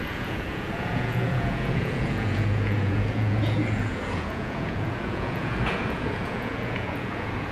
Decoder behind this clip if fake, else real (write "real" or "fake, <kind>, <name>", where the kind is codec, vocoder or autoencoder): fake, vocoder, Vocos